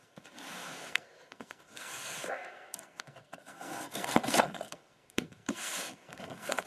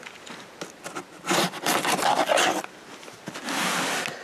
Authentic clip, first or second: second